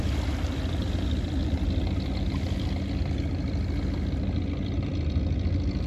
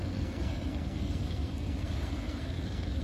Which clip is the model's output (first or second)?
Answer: second